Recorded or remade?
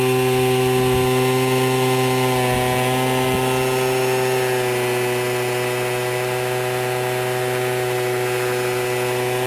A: recorded